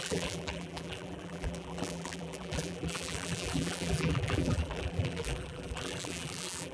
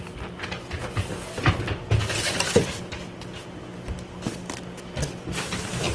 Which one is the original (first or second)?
second